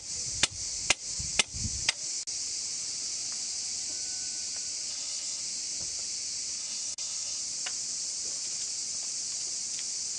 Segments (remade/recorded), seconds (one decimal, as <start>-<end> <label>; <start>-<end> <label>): 0.0-4.9 recorded; 4.9-5.4 remade; 5.4-6.6 recorded; 6.6-7.4 remade; 7.4-10.2 recorded